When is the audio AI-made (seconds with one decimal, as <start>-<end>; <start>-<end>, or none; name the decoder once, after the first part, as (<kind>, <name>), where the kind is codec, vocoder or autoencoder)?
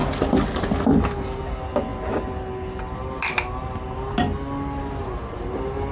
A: none